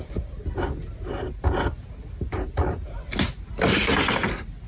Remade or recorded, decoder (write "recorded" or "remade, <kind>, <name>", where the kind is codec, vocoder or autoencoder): recorded